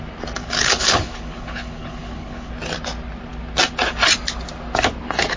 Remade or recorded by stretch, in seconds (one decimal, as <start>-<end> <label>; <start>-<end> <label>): 0.0-0.4 recorded; 0.4-2.5 remade; 2.5-5.4 recorded